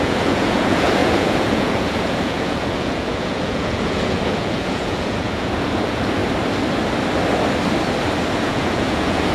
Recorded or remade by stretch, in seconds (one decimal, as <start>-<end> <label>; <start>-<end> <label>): 0.0-6.2 remade; 6.2-8.4 recorded; 8.4-9.3 remade